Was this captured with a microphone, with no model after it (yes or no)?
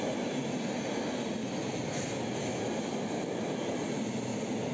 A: yes